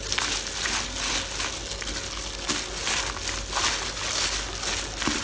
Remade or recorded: recorded